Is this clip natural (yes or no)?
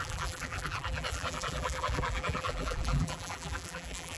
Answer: no